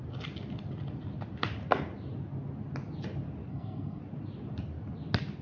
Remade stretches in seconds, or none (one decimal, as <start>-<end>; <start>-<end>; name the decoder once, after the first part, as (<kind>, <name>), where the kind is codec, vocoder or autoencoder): 3.5-4.0 (codec, SNAC)